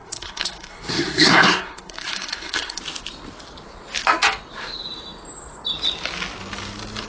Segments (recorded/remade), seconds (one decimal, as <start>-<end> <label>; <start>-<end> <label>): 0.0-2.8 remade; 2.8-7.1 recorded